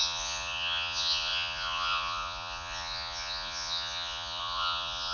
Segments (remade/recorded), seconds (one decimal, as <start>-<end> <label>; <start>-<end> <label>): 0.0-5.1 remade